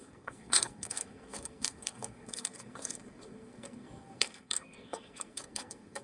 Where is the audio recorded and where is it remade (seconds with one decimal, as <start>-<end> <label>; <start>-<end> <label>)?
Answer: 0.0-6.0 remade